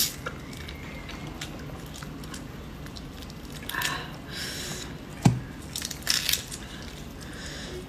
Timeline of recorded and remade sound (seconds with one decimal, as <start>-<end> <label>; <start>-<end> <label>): 0.0-7.9 recorded